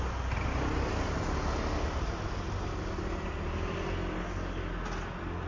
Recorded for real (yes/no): yes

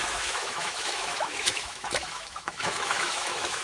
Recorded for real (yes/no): no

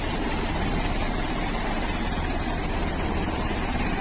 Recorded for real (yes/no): no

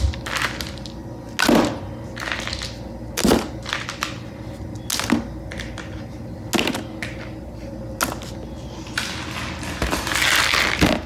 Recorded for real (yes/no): yes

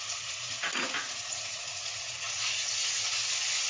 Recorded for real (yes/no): no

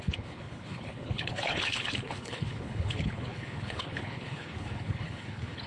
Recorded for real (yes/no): no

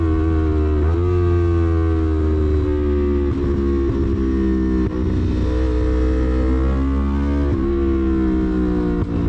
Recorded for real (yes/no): yes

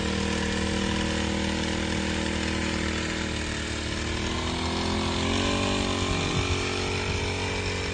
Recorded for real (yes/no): yes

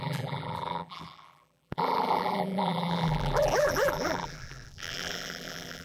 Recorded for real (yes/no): no